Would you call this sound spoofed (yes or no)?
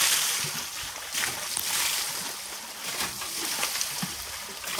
no